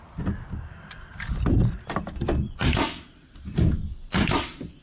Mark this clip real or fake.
real